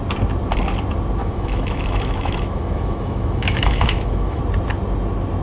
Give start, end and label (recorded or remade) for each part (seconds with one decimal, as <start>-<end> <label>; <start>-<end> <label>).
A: 0.0-1.2 recorded; 1.2-4.4 remade; 4.4-5.4 recorded

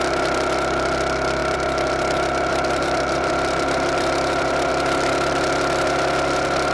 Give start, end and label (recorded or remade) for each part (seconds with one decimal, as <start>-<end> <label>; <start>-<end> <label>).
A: 0.0-1.4 recorded; 1.4-4.7 remade; 4.7-6.7 recorded

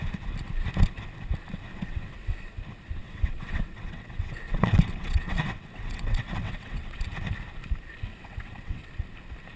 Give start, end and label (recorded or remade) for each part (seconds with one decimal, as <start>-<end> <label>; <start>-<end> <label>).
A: 0.0-1.7 recorded; 1.7-2.5 remade; 2.5-3.0 recorded; 3.0-7.0 remade; 7.0-8.1 recorded; 8.1-8.9 remade; 8.9-9.6 recorded